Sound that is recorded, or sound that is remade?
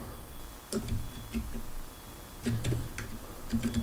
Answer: remade